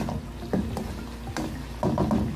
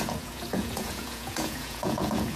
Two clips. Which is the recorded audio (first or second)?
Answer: first